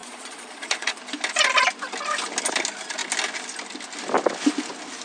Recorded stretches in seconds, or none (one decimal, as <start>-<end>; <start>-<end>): 1.0-5.0